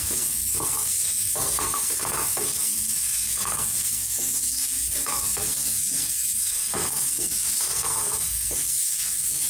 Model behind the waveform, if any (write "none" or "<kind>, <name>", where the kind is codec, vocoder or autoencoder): codec, SNAC